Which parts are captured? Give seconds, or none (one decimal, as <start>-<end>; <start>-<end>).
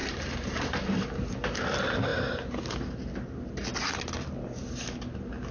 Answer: 1.1-5.5